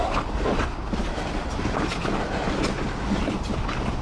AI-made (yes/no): no